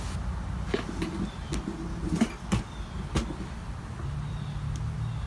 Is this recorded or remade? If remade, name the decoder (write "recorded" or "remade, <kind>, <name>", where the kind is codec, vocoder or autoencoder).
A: recorded